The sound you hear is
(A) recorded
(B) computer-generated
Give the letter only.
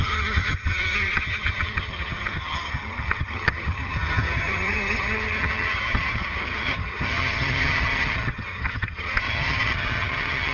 B